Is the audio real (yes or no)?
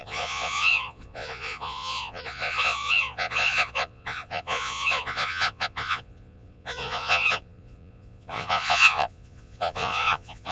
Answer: no